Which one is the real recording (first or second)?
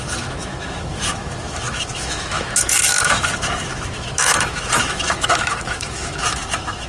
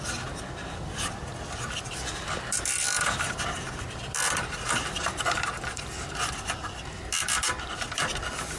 second